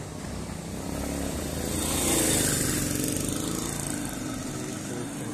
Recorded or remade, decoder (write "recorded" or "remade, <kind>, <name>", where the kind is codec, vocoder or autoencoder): recorded